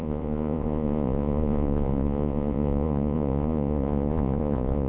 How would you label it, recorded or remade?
remade